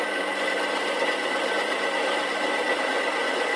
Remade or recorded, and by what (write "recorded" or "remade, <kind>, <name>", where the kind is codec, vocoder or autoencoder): remade, vocoder, BigVGAN v2